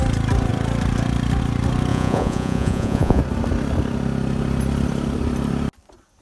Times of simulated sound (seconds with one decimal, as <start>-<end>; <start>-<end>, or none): 1.9-3.2